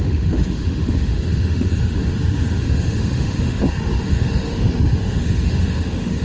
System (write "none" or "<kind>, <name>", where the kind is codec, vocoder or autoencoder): autoencoder, DAC-VAE